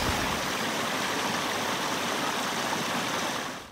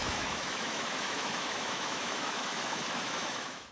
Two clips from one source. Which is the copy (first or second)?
second